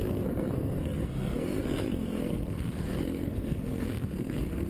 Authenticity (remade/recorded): remade